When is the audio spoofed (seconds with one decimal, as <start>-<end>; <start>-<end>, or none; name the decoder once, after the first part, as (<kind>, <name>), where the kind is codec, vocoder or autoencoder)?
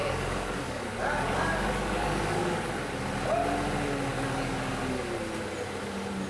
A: 0.0-2.7 (codec, DAC); 4.1-4.7